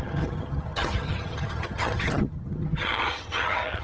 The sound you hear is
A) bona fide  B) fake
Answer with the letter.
B